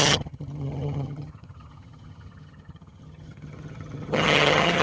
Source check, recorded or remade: remade